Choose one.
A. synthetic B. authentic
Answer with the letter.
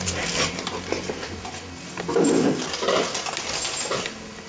B